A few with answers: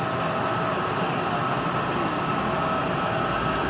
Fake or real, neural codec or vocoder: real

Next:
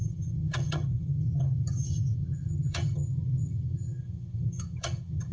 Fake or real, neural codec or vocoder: fake, vocoder, HiFi-GAN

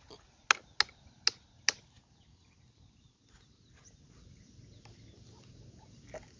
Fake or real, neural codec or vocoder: real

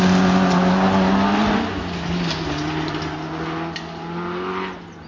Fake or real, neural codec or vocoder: real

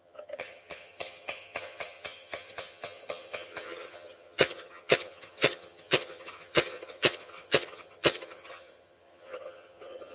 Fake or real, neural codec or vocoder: fake, vocoder, HiFi-GAN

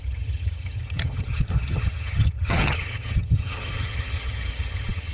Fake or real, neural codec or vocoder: fake, vocoder, HiFi-GAN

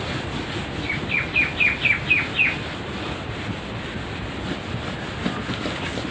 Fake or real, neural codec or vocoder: real